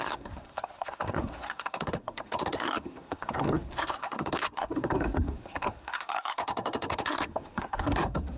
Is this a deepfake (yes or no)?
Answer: yes